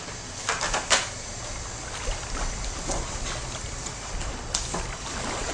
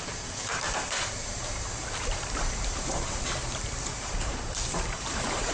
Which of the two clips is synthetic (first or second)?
second